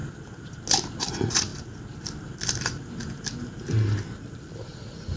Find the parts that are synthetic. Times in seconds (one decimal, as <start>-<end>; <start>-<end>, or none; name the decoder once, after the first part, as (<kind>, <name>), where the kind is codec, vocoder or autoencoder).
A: 1.1-1.5 (vocoder, Vocos); 4.6-5.2